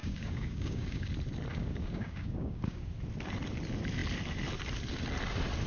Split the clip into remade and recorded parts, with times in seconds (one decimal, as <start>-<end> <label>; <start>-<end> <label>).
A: 0.0-1.1 remade; 1.1-1.5 recorded; 1.5-2.9 remade; 2.9-5.7 recorded